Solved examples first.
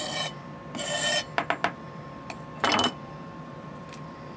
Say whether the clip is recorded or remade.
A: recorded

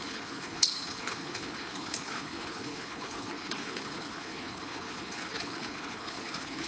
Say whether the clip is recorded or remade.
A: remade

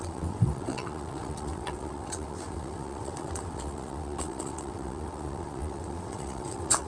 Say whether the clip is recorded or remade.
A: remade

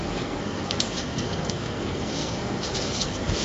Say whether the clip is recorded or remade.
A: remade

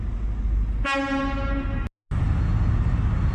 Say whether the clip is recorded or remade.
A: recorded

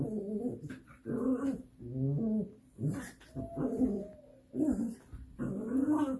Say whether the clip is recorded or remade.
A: recorded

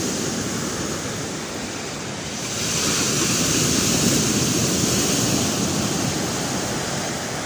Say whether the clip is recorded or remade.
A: recorded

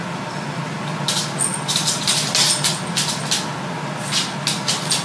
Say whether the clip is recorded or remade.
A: recorded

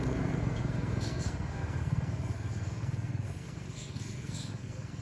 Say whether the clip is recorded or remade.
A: remade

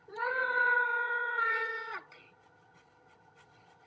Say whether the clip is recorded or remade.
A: remade